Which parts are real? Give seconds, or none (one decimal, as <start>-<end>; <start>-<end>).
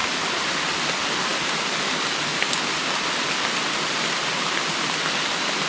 0.0-5.7